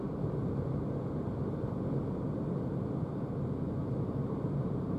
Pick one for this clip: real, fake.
real